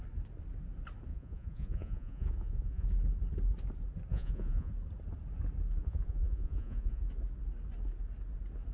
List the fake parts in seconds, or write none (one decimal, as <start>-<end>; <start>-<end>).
1.1-2.9; 4.1-4.7; 5.8-7.0